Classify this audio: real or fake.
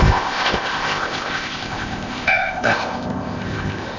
fake